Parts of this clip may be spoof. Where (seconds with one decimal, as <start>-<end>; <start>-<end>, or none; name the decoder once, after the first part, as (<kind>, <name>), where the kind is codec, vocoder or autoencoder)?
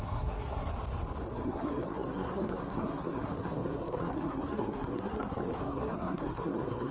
0.0-0.7 (codec, SNAC); 1.3-6.9